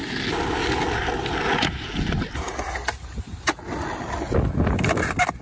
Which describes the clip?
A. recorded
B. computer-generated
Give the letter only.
A